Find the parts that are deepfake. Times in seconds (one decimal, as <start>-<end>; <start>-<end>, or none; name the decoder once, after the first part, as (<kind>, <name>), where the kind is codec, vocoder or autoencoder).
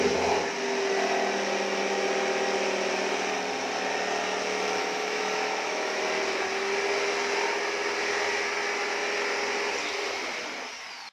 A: 4.8-6.0 (autoencoder, DAC-VAE)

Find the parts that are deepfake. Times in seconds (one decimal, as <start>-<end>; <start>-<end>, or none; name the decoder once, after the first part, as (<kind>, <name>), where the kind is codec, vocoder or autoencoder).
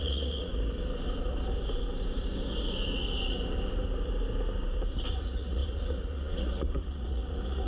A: 0.0-0.5 (vocoder, Vocos); 5.1-7.7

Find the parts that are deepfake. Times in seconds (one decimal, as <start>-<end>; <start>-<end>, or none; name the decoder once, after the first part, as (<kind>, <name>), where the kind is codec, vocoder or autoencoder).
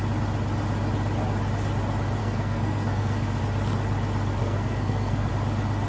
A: 2.2-3.4 (codec, SNAC); 4.4-5.3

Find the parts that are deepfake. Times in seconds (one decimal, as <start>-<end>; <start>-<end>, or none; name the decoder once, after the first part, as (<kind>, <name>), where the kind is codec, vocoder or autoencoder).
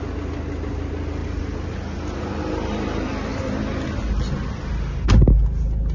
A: 1.2-4.7 (vocoder, BigVGAN v2)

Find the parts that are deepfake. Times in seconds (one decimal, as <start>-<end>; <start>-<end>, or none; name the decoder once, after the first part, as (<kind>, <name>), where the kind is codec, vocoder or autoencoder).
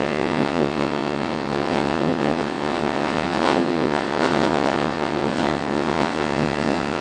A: 0.0-7.0 (vocoder, WaveNeXt)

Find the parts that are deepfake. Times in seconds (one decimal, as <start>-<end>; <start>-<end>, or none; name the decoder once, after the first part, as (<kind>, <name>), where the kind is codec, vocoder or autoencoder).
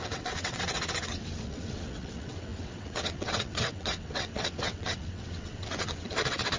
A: 0.0-6.6 (vocoder, WaveNeXt)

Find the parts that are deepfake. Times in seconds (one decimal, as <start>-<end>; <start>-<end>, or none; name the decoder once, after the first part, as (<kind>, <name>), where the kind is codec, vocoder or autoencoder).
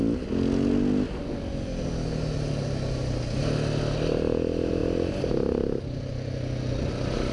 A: none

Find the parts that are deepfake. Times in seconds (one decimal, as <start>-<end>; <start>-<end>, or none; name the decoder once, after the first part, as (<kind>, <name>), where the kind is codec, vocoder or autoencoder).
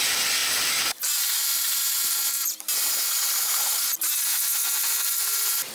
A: none